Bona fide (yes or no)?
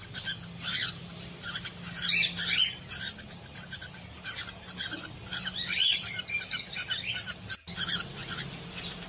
yes